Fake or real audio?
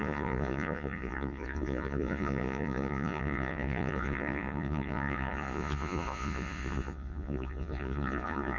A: fake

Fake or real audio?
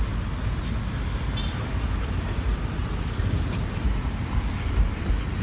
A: real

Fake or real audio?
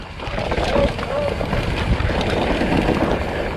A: real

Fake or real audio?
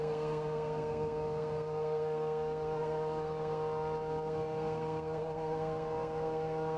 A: fake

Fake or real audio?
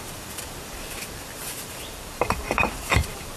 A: fake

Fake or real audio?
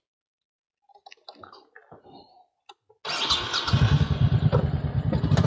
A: real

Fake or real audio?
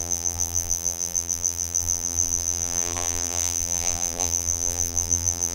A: fake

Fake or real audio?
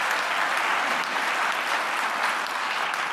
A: real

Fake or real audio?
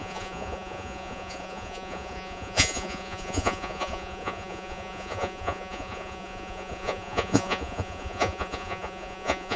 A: fake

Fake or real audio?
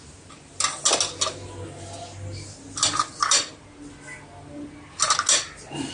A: real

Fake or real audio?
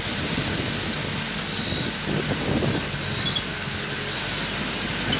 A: real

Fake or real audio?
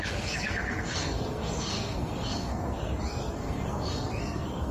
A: fake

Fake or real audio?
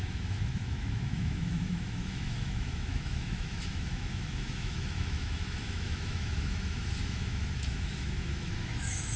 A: fake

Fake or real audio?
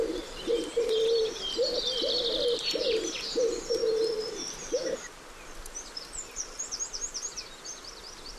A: fake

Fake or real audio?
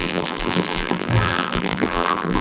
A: fake